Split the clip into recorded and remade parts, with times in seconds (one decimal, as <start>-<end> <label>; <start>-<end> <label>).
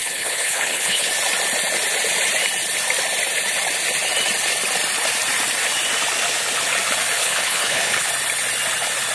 0.0-1.1 remade; 1.1-7.2 recorded; 7.2-8.1 remade; 8.1-9.1 recorded